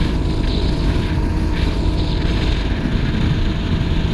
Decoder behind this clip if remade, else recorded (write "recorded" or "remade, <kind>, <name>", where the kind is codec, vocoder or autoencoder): recorded